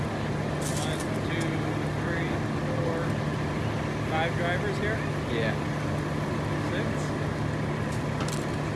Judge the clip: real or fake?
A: real